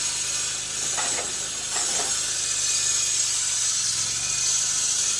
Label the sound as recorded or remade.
recorded